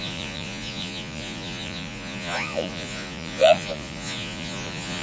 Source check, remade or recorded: remade